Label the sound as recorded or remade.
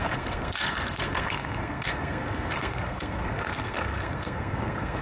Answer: remade